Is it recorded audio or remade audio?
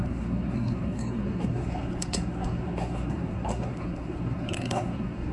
remade